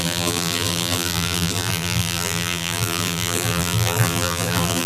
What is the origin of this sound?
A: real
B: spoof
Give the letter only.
B